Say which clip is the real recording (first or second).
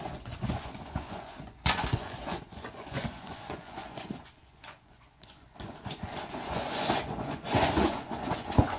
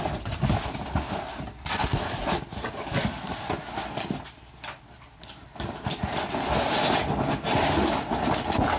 second